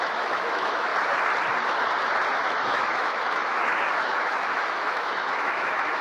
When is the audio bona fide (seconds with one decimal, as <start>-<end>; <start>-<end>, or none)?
0.9-2.7